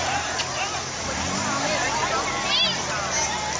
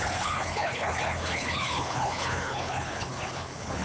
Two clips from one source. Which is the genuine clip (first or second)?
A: first